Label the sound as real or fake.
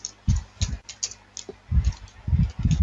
real